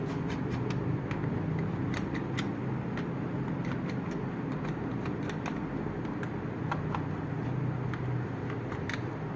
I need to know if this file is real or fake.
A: real